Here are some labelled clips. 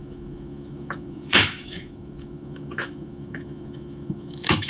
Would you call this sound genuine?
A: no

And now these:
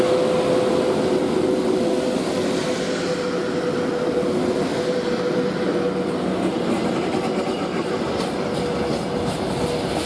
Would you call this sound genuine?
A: yes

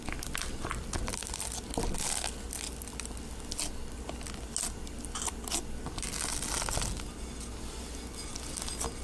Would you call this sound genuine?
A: yes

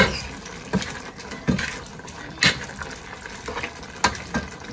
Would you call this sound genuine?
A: yes